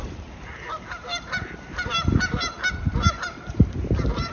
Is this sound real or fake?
fake